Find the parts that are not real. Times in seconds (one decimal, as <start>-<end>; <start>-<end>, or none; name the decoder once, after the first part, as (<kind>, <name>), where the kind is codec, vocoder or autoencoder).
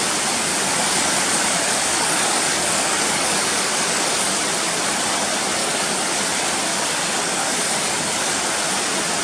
0.5-4.4 (codec, DAC); 5.6-6.2; 6.7-8.4